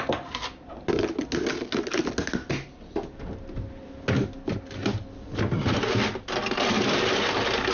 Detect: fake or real real